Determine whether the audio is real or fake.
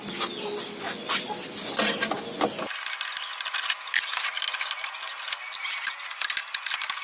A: real